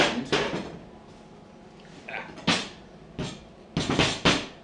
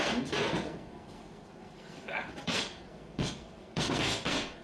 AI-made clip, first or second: second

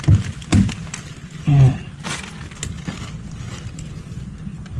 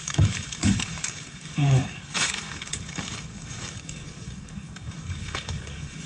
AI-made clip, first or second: second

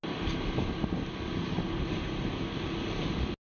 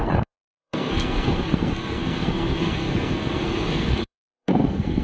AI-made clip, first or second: second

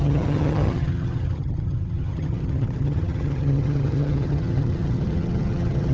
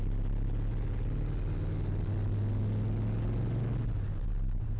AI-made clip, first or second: first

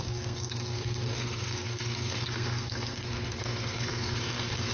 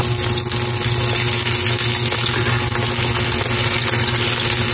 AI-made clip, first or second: first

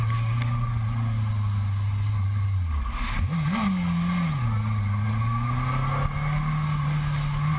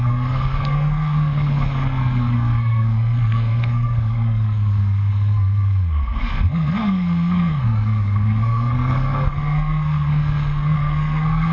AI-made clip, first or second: second